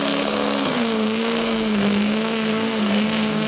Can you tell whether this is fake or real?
fake